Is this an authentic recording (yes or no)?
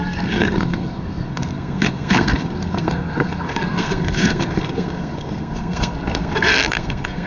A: no